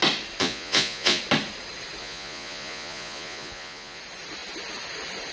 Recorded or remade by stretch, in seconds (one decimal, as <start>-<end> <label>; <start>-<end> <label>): 0.0-0.4 recorded; 0.4-1.2 remade; 1.2-2.0 recorded; 2.0-4.0 remade; 4.0-5.3 recorded